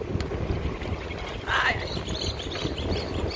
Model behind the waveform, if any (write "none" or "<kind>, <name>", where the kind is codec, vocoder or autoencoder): none